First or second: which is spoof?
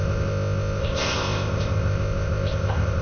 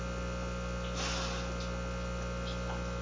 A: first